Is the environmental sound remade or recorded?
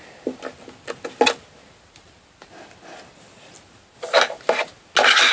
recorded